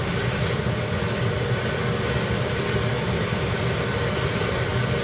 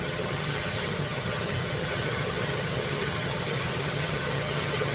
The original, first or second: first